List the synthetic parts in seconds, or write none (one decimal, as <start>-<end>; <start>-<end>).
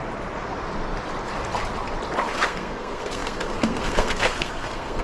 2.3-5.0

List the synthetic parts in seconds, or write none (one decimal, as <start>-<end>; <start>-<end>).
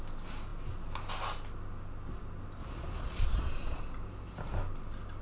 2.6-3.8